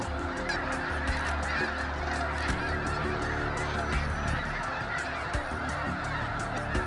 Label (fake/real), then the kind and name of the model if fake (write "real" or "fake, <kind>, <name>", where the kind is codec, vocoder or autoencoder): real